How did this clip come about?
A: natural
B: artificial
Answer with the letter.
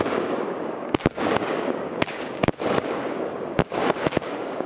B